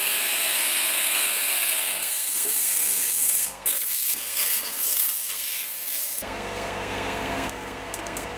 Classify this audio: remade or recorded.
remade